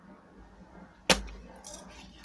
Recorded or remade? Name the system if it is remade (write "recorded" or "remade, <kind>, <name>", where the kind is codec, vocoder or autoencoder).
recorded